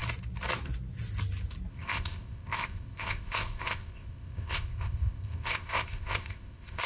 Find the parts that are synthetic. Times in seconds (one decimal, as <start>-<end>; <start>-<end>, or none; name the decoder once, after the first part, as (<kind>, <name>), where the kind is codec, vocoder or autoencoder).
1.7-6.9 (codec, ZipCodec)